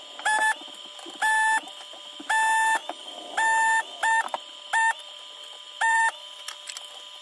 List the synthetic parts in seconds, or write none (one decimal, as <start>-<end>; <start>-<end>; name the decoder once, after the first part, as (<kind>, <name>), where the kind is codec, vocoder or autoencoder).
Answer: none